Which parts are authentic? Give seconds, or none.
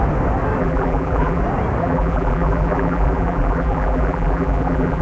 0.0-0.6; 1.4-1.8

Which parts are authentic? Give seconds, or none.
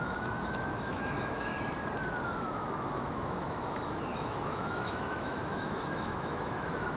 1.5-2.4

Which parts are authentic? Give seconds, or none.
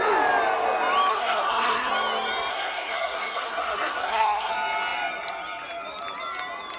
0.0-1.1; 1.9-2.5; 4.5-6.8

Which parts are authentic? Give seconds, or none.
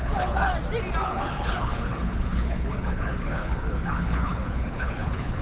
0.5-1.0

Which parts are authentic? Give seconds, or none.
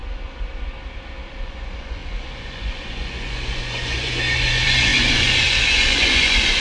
0.0-1.4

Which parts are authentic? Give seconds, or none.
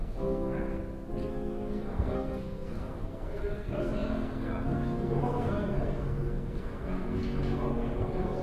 0.8-1.3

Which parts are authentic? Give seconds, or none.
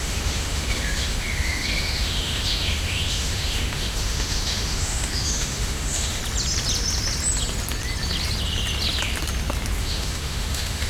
6.2-9.8